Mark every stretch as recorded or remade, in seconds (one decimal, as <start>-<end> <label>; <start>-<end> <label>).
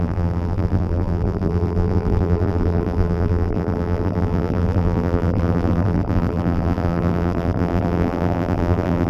0.0-9.1 remade